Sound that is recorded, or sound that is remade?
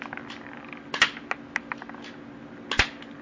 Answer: recorded